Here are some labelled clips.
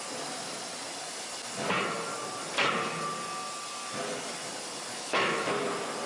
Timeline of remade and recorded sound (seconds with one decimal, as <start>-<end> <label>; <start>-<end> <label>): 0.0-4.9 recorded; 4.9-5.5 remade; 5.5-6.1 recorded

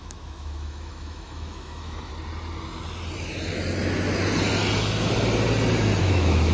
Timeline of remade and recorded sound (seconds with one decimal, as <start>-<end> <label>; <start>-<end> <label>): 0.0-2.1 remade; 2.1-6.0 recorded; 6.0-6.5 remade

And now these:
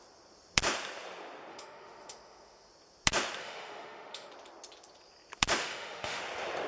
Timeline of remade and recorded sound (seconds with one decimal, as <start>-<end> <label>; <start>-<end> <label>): 0.0-1.5 recorded; 1.5-2.7 remade; 2.7-3.4 recorded; 3.4-4.3 remade; 4.3-5.6 recorded; 5.6-6.2 remade; 6.2-6.7 recorded